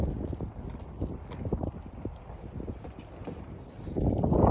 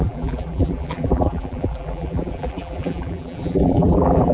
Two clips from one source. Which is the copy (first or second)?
second